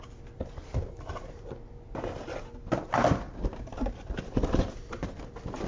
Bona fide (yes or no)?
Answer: yes